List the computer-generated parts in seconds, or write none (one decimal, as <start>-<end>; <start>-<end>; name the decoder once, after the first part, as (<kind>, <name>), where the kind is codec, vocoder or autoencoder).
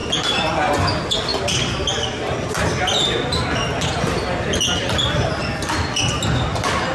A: none